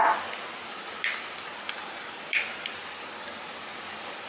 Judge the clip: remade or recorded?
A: recorded